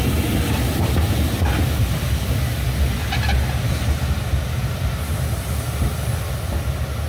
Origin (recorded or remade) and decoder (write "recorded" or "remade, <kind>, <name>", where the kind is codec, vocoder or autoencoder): recorded